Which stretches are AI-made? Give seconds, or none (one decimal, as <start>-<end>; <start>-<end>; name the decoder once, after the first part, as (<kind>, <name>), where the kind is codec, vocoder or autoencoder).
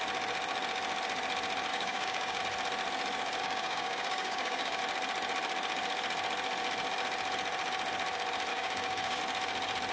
1.7-2.4 (codec, DAC); 3.4-4.8; 8.5-9.2